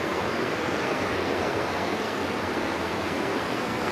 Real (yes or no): no